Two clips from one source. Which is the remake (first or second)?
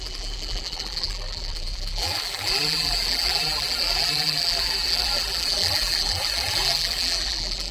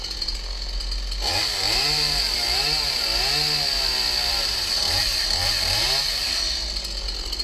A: first